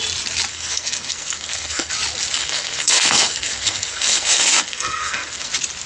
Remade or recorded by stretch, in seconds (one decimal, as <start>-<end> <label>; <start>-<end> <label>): 0.0-0.5 recorded; 0.5-1.9 remade; 1.9-2.4 recorded; 2.4-5.5 remade; 5.5-5.9 recorded